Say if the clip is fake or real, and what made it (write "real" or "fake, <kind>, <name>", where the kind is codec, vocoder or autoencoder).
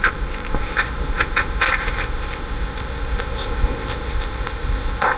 fake, codec, ZipCodec